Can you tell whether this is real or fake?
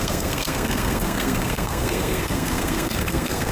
fake